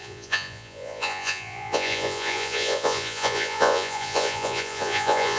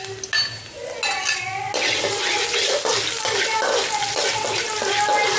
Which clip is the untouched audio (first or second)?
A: second